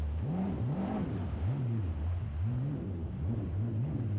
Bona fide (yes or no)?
no